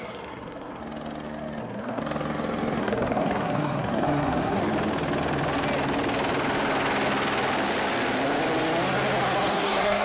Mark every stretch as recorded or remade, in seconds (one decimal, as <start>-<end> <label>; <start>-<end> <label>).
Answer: 0.0-0.8 remade; 0.8-1.6 recorded; 1.6-2.0 remade; 2.0-2.8 recorded; 2.8-4.6 remade; 4.6-9.5 recorded; 9.5-10.0 remade